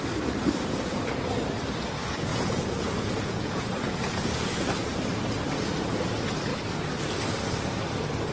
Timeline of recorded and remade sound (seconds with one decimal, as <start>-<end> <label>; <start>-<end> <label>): 0.0-2.3 recorded; 2.3-4.5 remade; 4.5-8.3 recorded